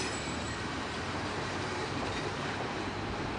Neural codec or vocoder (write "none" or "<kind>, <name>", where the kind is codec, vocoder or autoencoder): vocoder, BigVGAN v2